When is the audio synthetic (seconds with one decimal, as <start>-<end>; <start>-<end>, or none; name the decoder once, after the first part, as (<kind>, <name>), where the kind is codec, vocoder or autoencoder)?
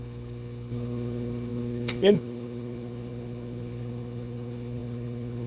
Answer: 0.0-5.5 (codec, HILCodec)